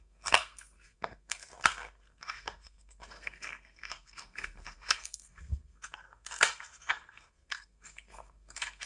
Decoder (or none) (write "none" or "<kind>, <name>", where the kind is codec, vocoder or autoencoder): codec, SNAC